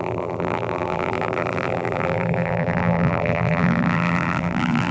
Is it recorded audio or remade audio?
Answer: remade